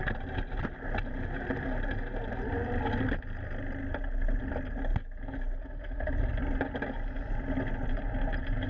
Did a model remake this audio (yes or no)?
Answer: no